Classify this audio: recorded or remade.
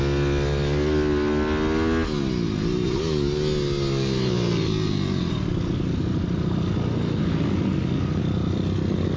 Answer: recorded